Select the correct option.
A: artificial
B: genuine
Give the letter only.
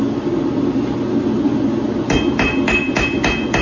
B